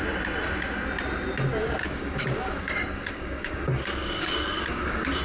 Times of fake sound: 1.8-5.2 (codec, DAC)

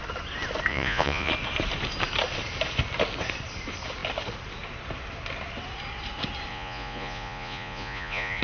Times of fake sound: 0.7-1.3 (vocoder, Vocos); 6.5-8.4

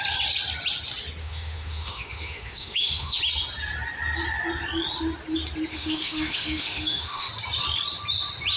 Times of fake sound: 1.2-3.2 (autoencoder, DAC-VAE); 5.7-7.3

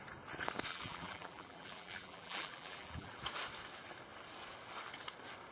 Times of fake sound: 0.7-3.2 (vocoder, BigVGAN v2)

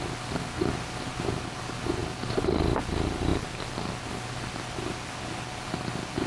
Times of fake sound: none

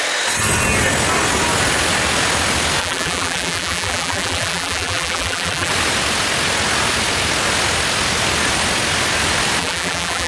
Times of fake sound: 2.8-5.7 (vocoder, BigVGAN v2); 9.6-10.3

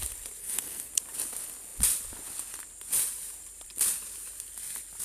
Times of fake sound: 0.4-0.9 (codec, SNAC)

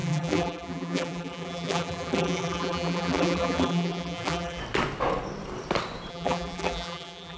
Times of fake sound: 0.0-4.6 (vocoder, BigVGAN v2); 6.1-7.4